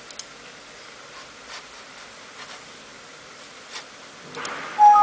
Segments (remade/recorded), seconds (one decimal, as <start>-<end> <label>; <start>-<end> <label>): 0.0-5.0 recorded